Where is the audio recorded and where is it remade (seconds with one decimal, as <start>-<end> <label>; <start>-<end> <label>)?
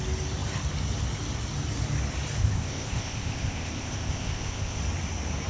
0.0-2.4 recorded; 2.4-4.8 remade; 4.8-5.5 recorded